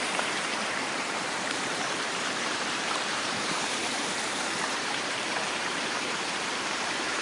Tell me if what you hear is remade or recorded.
remade